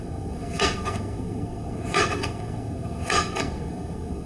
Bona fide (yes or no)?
no